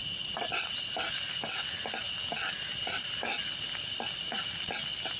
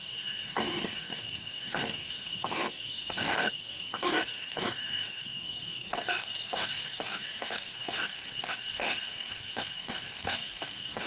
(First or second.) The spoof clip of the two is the second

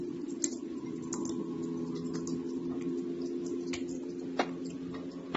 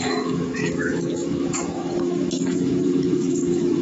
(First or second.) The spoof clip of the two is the second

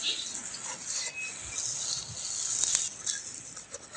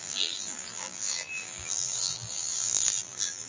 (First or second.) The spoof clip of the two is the second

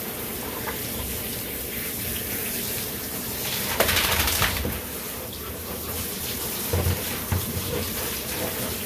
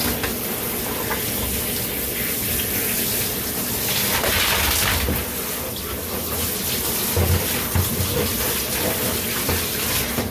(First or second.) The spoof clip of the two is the first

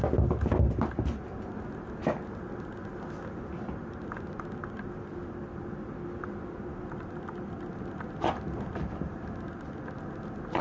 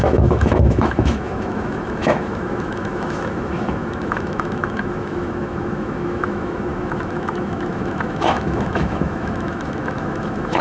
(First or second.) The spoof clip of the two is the second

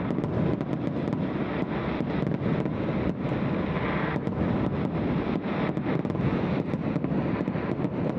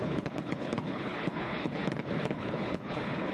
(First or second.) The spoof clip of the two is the second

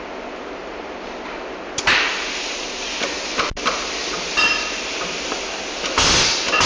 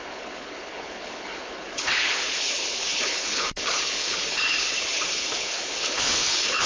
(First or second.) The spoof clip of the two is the second